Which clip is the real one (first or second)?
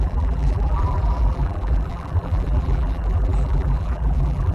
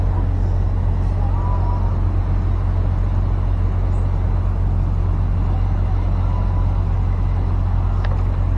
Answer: second